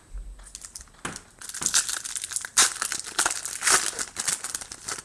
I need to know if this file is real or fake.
real